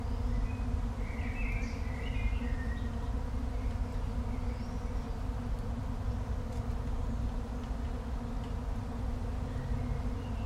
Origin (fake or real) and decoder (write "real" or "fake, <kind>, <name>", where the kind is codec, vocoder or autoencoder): real